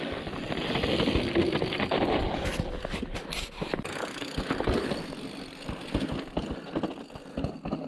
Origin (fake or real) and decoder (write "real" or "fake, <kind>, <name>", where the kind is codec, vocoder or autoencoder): real